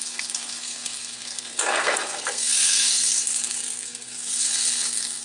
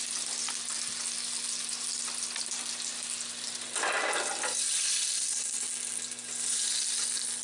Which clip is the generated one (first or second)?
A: first